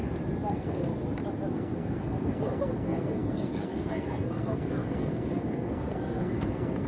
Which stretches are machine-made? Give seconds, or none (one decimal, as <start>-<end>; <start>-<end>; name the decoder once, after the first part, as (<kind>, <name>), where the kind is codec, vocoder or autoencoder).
0.5-0.9 (codec, SNAC); 1.5-6.9